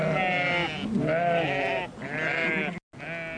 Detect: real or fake real